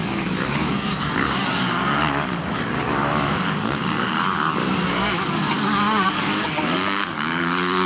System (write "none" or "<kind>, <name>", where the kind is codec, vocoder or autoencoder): codec, DAC